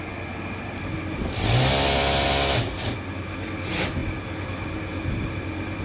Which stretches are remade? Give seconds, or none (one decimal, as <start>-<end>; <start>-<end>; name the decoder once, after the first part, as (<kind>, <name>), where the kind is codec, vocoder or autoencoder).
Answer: none